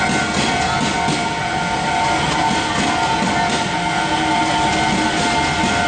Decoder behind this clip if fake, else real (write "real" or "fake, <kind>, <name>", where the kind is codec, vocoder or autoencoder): real